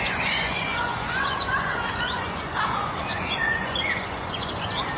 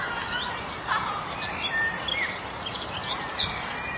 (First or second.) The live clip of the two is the second